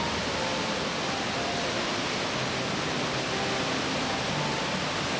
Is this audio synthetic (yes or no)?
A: no